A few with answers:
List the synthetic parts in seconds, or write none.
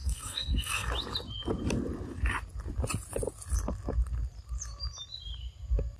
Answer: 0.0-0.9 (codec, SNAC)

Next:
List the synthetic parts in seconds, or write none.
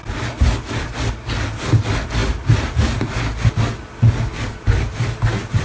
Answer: none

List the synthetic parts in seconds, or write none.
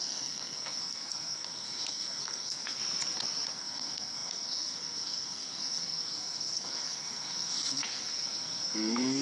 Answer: 0.0-2.8 (codec, SNAC); 3.5-9.2